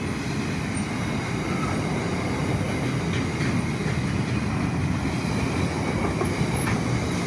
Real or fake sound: real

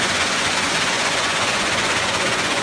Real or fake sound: fake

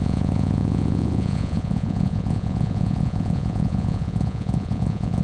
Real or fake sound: fake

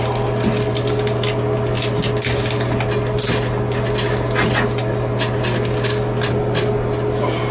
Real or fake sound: real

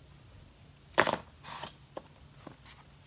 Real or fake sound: real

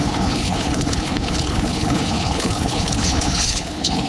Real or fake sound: fake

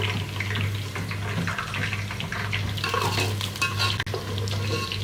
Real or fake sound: real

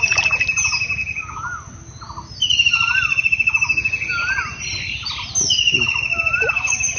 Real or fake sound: real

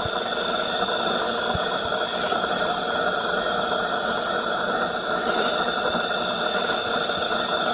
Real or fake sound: real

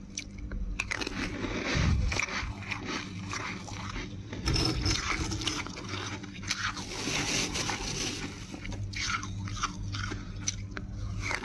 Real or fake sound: real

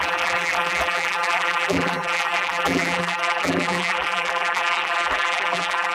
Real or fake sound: fake